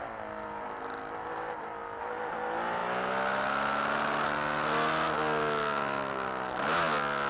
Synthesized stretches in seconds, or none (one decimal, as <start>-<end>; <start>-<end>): none